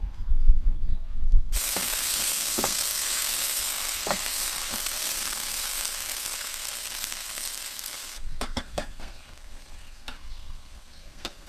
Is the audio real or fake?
fake